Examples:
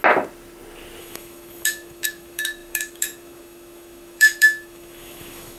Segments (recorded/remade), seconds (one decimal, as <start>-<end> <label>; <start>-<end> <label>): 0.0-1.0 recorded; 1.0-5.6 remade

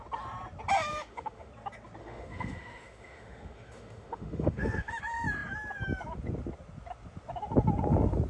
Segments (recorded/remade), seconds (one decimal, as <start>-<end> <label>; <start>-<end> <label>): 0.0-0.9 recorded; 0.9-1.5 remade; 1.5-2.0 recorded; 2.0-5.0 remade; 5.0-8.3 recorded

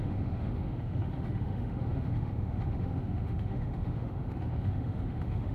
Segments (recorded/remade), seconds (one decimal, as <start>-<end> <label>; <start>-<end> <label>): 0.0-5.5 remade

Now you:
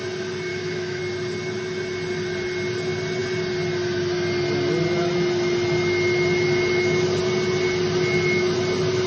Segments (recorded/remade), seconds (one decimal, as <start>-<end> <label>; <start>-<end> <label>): 0.0-0.5 recorded; 0.5-1.0 remade; 1.0-9.1 recorded